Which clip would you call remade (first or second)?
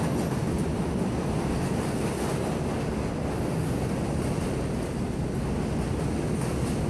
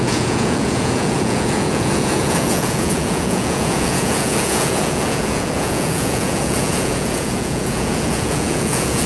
second